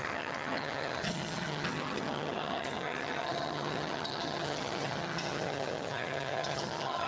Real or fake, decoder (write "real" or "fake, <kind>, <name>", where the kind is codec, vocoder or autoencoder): fake, vocoder, HiFi-GAN